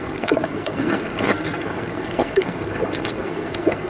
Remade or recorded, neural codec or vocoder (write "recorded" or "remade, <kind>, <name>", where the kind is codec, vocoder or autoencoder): remade, codec, SNAC